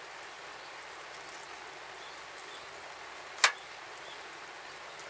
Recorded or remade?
recorded